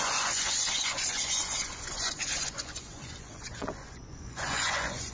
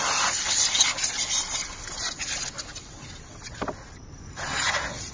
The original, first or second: second